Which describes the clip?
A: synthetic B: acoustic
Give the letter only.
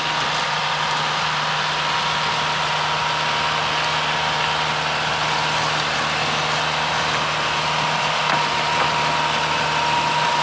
B